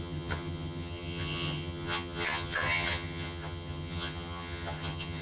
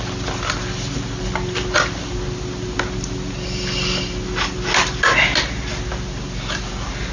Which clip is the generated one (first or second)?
first